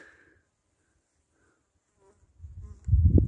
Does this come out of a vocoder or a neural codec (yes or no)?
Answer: no